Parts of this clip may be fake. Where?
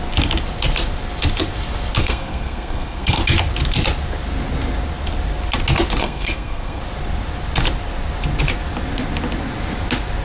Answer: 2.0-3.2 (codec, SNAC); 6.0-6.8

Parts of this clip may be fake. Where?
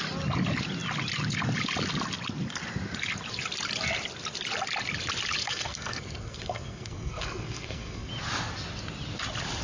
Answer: 5.4-8.1 (codec, SNAC)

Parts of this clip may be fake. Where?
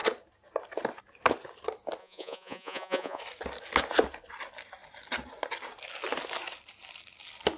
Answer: 2.0-3.2 (vocoder, Vocos)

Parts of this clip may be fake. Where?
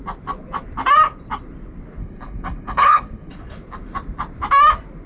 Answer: 2.0-3.3 (codec, HILCodec)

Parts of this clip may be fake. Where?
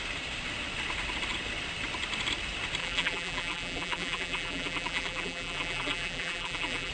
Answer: 2.8-6.9 (vocoder, BigVGAN v2)